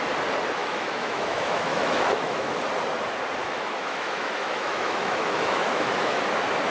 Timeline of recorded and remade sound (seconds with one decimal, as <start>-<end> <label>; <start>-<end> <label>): 0.0-0.6 recorded; 0.6-2.5 remade; 2.5-3.4 recorded; 3.4-6.2 remade; 6.2-6.7 recorded